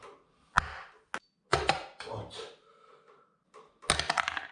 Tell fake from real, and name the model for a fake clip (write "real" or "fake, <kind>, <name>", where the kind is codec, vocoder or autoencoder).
real